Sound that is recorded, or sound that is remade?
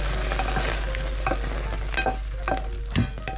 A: recorded